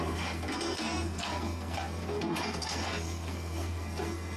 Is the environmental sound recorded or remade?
remade